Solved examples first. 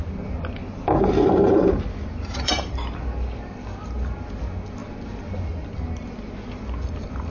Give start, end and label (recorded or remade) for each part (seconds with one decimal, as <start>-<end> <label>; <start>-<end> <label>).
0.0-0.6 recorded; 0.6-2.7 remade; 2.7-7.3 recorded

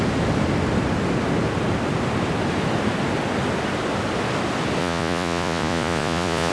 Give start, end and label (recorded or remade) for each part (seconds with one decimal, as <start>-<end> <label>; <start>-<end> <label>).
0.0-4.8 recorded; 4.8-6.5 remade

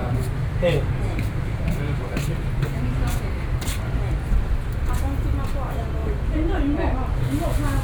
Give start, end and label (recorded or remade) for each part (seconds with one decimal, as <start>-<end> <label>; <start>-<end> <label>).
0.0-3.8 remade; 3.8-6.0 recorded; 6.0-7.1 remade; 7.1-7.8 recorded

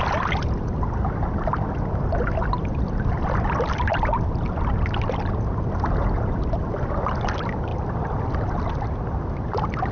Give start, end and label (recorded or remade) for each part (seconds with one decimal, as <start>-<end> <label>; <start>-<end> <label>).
0.0-9.9 recorded

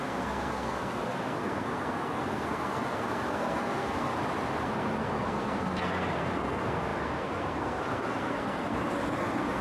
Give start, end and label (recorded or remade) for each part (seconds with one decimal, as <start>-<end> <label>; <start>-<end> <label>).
0.0-4.1 remade; 4.1-4.6 recorded; 4.6-9.6 remade